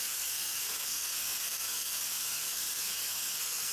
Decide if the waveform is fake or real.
fake